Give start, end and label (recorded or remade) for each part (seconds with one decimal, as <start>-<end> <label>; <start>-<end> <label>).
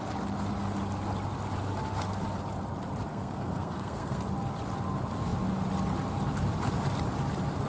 0.0-3.1 recorded; 3.1-4.2 remade; 4.2-7.7 recorded